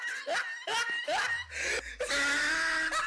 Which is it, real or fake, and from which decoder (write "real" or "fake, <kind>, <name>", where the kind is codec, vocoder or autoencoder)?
real